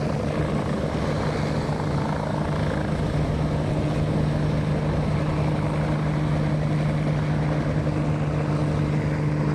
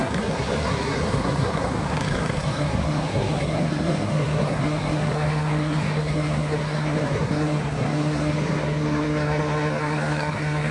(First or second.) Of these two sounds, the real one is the first